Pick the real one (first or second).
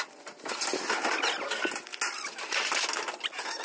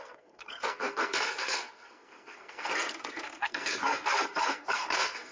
first